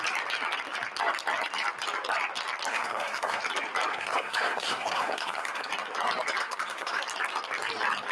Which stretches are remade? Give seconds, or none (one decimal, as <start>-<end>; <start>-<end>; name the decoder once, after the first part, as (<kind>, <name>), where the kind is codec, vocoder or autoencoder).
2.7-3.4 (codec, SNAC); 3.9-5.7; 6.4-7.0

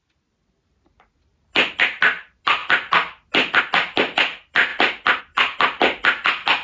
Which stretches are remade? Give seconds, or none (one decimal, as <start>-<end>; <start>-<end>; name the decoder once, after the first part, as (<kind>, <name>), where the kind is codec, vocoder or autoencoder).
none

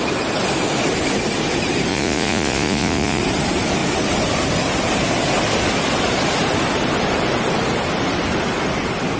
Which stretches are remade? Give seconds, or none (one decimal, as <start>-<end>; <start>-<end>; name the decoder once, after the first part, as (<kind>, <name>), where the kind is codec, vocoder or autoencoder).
1.9-3.2 (vocoder, Vocos)

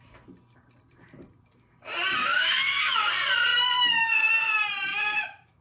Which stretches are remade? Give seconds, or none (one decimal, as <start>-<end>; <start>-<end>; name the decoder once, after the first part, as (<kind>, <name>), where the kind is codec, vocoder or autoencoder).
2.2-3.1 (autoencoder, DAC-VAE); 4.9-5.6

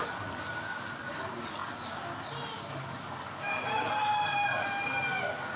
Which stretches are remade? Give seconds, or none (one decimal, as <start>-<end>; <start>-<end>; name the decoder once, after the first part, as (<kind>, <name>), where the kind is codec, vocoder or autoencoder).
none

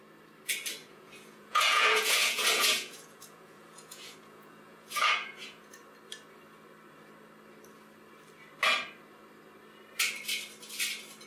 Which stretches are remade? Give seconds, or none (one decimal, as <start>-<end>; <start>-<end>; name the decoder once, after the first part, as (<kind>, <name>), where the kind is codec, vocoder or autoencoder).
0.8-5.7 (vocoder, Vocos)